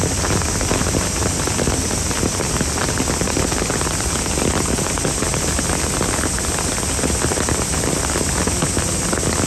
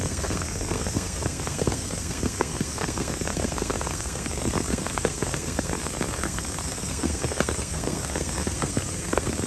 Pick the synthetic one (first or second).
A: second